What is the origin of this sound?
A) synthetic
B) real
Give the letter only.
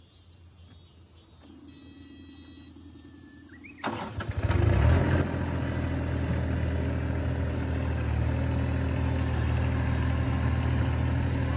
B